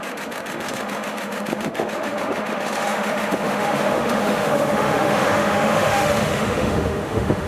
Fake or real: fake